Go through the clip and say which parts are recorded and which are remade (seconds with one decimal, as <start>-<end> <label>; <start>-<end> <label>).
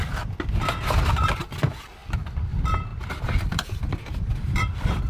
0.0-2.9 recorded; 2.9-5.1 remade